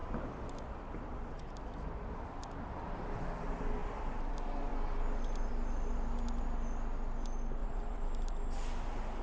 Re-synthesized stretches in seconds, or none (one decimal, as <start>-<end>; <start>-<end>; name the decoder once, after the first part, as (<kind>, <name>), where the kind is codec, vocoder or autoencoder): 7.6-8.3 (vocoder, BigVGAN v2)